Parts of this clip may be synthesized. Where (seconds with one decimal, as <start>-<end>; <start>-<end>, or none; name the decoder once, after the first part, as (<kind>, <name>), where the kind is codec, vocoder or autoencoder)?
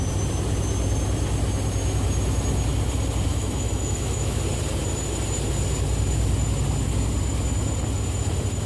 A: 3.3-4.4 (autoencoder, DAC-VAE)